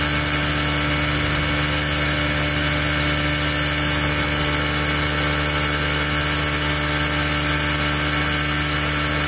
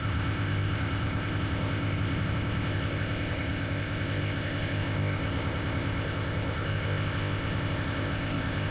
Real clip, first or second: first